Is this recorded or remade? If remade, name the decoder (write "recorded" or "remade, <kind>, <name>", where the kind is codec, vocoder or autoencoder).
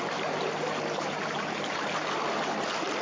recorded